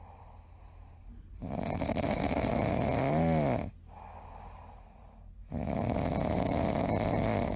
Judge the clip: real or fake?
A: real